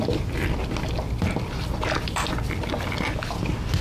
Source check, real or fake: real